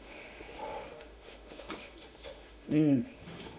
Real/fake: fake